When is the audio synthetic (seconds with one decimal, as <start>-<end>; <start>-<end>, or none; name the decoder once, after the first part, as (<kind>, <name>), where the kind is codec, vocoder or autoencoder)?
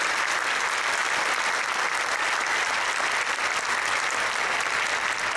none